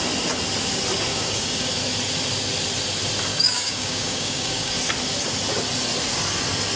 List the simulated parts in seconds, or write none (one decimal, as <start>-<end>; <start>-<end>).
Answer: 1.1-1.7; 3.3-4.7